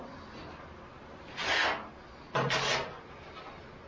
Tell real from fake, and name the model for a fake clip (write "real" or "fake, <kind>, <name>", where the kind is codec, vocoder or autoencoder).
real